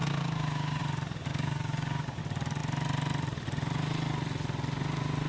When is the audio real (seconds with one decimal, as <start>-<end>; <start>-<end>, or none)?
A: 0.8-1.3; 2.2-5.3